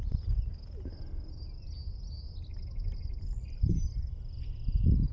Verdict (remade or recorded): recorded